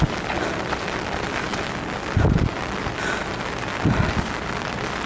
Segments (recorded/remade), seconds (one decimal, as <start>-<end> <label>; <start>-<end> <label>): 0.0-5.1 recorded